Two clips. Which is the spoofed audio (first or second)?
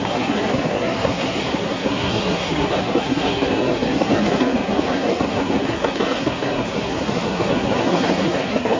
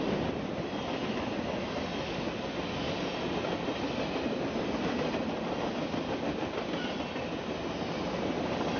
first